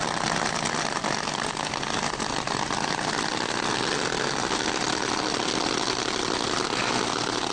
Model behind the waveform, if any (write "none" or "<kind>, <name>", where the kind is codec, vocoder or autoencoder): none